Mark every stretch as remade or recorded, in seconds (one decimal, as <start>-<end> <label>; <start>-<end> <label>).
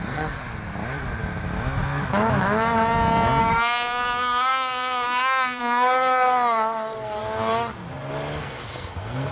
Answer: 0.0-0.4 remade; 0.4-3.4 recorded; 3.4-7.2 remade; 7.2-8.4 recorded; 8.4-9.3 remade